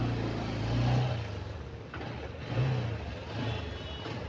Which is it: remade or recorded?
recorded